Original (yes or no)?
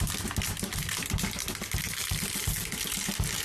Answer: yes